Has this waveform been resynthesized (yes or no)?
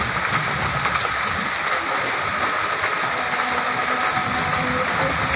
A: no